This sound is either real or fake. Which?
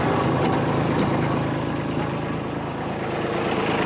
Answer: real